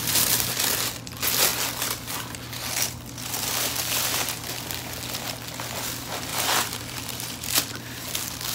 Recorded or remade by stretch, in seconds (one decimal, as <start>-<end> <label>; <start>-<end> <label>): 0.0-6.3 recorded; 6.3-7.7 remade; 7.7-8.5 recorded